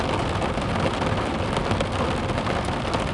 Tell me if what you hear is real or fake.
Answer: real